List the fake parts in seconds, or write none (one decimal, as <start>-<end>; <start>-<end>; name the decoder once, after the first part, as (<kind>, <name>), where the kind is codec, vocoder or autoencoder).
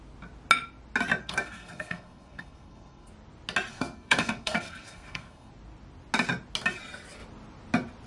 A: 1.2-3.1 (codec, SNAC); 3.7-5.5